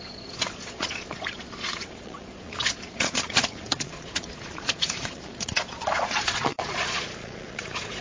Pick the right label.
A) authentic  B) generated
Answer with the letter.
B